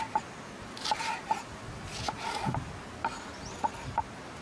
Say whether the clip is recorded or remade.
recorded